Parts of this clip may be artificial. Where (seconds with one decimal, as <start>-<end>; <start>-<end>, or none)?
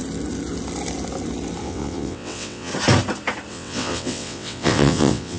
1.6-2.7; 3.5-5.4